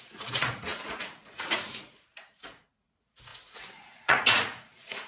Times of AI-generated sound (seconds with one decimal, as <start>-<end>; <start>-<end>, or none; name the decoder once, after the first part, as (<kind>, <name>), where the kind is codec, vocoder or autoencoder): 0.0-5.1 (vocoder, Vocos)